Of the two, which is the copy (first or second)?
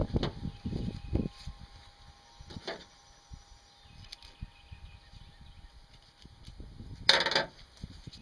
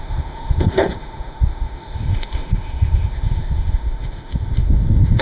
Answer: second